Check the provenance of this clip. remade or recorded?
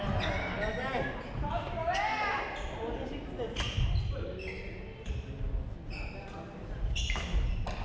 recorded